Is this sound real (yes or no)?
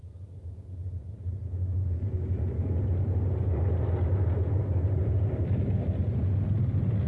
yes